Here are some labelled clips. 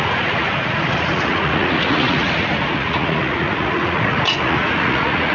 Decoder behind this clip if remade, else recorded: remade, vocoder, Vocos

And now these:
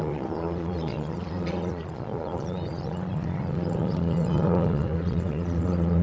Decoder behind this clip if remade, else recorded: remade, vocoder, Vocos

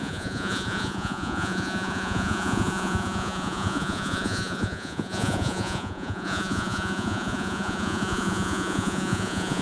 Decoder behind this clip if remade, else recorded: remade, vocoder, Vocos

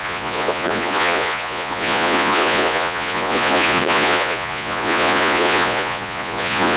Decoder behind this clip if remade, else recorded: remade, vocoder, Vocos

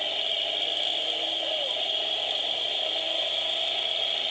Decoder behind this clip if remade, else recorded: recorded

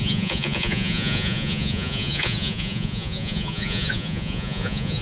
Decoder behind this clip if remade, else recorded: remade, vocoder, Vocos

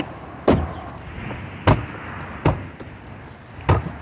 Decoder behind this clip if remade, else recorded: recorded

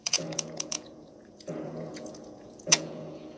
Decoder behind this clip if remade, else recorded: remade, vocoder, Vocos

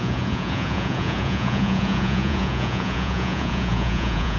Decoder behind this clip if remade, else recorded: remade, vocoder, Vocos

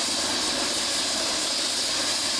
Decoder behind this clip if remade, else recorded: recorded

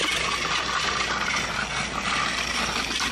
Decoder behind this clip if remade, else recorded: recorded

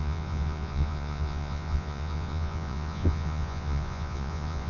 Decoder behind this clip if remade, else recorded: remade, vocoder, Vocos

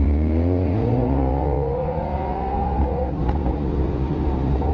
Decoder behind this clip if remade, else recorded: remade, vocoder, Vocos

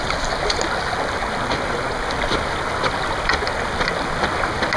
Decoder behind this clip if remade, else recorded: recorded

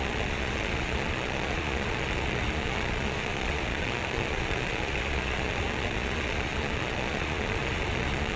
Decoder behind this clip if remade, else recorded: remade, vocoder, Vocos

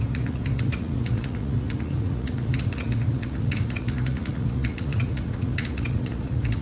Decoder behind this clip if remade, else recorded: remade, vocoder, Vocos